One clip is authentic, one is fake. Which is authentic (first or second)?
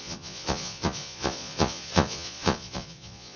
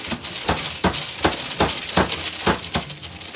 second